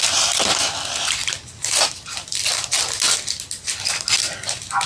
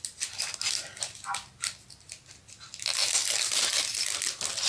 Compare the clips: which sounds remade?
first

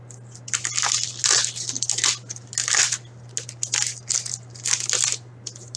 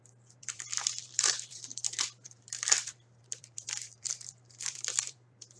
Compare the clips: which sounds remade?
second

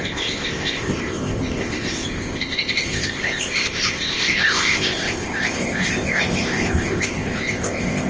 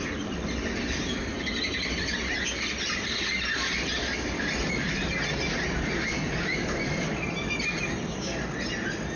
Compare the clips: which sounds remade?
first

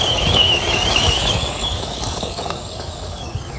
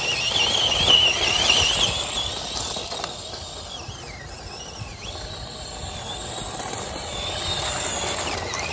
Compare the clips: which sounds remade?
first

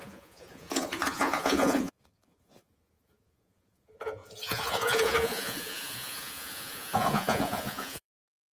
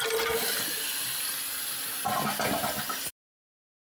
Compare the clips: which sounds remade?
first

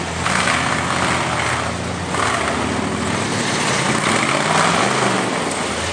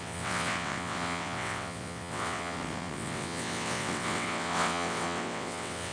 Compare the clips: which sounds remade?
second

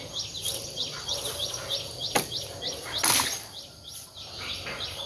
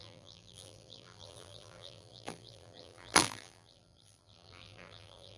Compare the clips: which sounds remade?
second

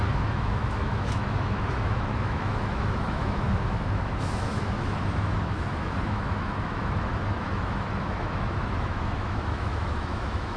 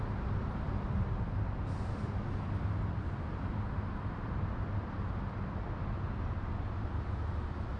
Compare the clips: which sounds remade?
first